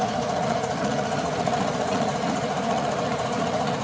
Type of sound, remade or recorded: remade